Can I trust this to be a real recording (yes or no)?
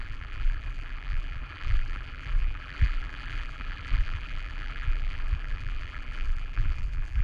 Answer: no